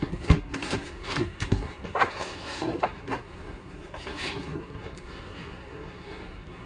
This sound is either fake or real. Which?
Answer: fake